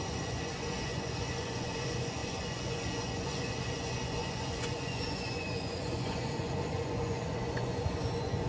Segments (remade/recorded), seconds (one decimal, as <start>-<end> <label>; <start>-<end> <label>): 0.0-8.5 remade